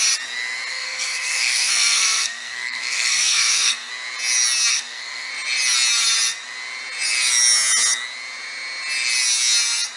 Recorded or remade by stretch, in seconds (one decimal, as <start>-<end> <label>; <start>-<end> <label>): 0.0-0.7 recorded; 0.7-3.9 remade; 3.9-4.7 recorded; 4.7-5.3 remade; 5.3-10.0 recorded